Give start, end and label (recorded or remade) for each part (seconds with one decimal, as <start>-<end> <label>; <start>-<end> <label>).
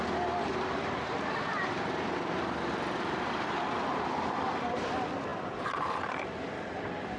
0.0-7.2 remade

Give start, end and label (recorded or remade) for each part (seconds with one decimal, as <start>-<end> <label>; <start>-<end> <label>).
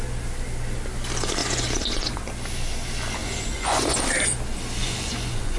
0.0-1.4 recorded; 1.4-2.2 remade; 2.2-3.2 recorded; 3.2-4.0 remade; 4.0-4.8 recorded; 4.8-5.6 remade